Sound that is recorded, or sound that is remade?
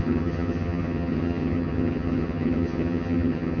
remade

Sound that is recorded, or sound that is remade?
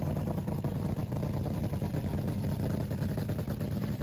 recorded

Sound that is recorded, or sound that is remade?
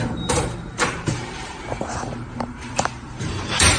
remade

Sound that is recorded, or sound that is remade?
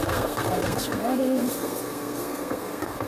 remade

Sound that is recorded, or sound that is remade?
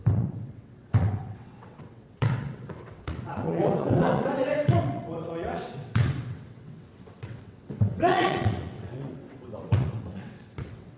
remade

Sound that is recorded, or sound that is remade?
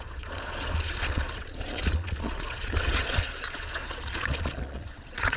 remade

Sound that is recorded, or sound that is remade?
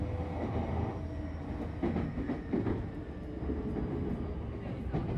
recorded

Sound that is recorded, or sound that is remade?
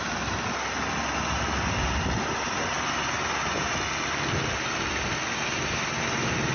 recorded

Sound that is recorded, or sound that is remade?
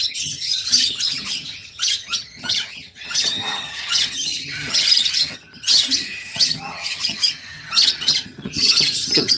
remade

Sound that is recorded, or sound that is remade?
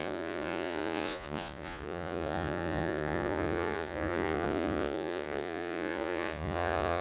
remade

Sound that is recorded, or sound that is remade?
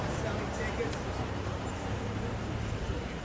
remade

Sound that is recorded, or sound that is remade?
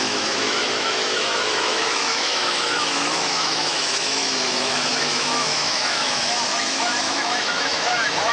remade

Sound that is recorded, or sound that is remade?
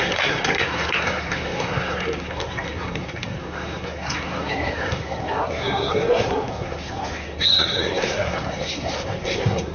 remade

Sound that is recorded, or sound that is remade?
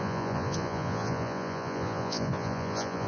remade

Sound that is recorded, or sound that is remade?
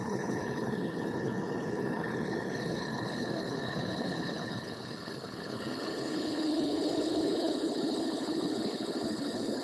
remade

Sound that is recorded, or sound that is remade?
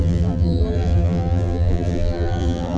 remade